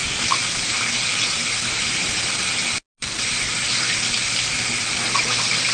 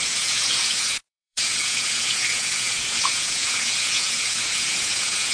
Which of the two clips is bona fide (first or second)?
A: first